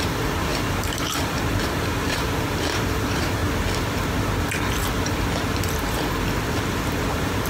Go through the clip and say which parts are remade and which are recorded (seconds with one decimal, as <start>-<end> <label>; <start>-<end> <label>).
0.0-3.4 remade; 3.4-6.7 recorded; 6.7-7.5 remade